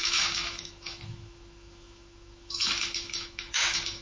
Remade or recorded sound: remade